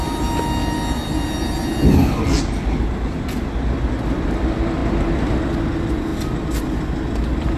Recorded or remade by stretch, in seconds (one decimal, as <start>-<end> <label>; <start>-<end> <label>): 0.0-7.6 recorded